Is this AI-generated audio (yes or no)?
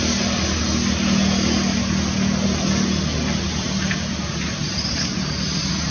no